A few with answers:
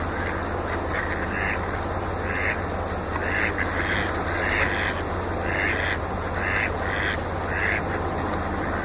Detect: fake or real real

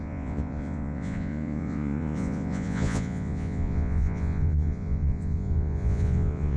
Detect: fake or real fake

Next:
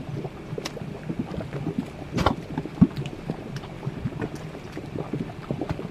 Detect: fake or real real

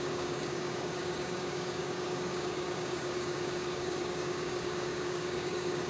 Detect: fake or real fake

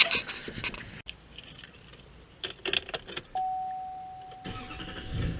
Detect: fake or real real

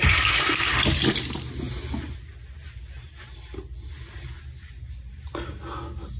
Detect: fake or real real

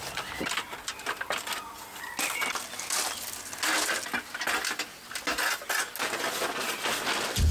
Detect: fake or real real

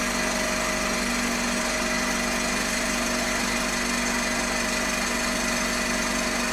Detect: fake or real real